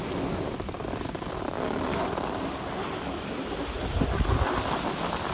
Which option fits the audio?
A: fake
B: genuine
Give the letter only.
B